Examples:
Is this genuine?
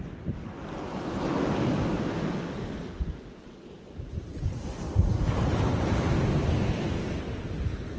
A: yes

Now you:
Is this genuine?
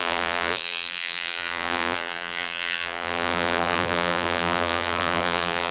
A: no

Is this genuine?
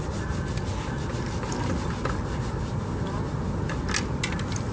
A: yes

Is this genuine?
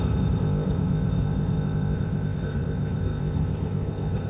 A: no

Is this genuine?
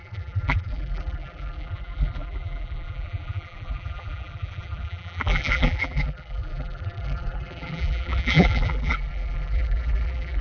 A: no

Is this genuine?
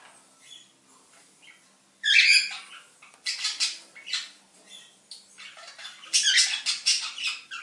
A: yes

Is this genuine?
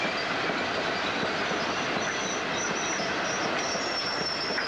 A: yes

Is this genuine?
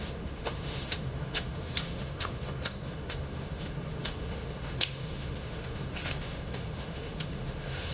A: no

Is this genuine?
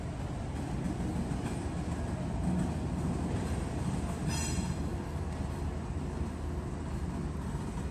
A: yes